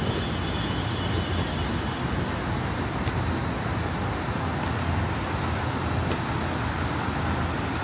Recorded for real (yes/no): yes